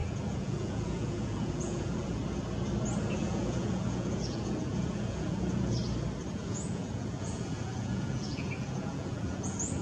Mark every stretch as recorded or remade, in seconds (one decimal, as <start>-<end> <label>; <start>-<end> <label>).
0.0-2.2 remade; 2.2-2.9 recorded; 2.9-5.8 remade; 5.8-6.3 recorded; 6.3-9.8 remade